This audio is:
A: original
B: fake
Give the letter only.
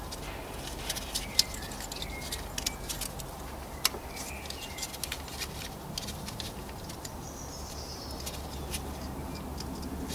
A